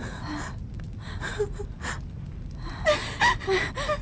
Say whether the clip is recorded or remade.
recorded